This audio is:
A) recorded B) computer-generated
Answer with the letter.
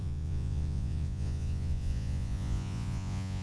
B